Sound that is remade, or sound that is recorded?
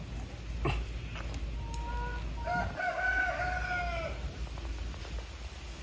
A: recorded